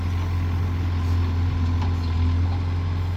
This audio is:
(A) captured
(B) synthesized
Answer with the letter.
A